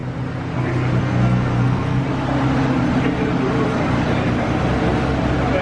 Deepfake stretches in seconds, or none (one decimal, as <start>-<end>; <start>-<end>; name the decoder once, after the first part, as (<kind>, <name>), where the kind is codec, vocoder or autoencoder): 1.0-2.0 (codec, SNAC)